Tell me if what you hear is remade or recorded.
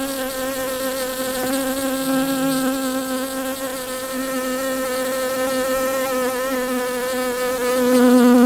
recorded